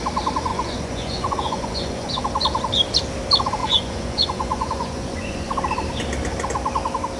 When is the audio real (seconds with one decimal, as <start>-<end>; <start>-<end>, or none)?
0.0-0.5; 2.2-3.6; 5.5-7.2